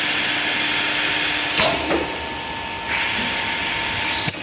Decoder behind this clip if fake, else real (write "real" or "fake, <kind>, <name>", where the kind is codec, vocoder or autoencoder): real